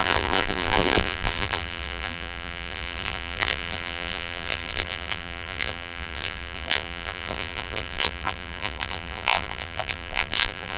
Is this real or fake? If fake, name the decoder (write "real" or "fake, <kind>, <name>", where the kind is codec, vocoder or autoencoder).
fake, vocoder, BigVGAN v2